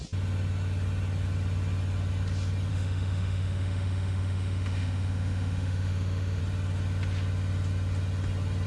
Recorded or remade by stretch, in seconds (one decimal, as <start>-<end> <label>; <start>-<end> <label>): 0.0-2.7 recorded; 2.7-6.4 remade; 6.4-8.7 recorded